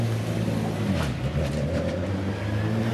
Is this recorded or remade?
recorded